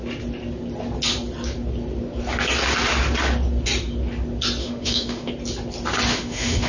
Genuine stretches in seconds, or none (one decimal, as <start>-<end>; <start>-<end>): 0.0-4.6; 5.3-6.1